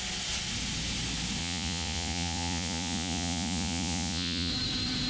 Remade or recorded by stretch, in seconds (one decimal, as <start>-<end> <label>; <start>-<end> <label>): 0.0-1.4 recorded; 1.4-4.5 remade; 4.5-5.1 recorded

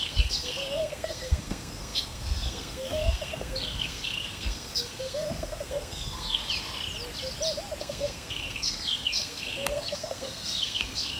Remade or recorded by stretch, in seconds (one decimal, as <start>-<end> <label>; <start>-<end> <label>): 0.0-6.4 remade; 6.4-7.8 recorded; 7.8-11.2 remade

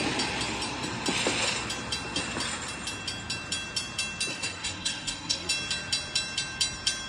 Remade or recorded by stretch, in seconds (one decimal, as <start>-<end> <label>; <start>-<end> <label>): 0.0-4.3 recorded; 4.3-5.5 remade; 5.5-7.1 recorded